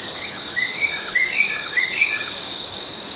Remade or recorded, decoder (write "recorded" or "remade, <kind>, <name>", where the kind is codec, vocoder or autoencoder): remade, codec, DAC